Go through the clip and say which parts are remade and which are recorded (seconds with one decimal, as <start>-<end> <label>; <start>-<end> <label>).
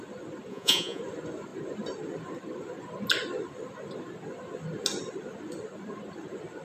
0.0-0.5 recorded; 0.5-1.0 remade; 1.0-6.6 recorded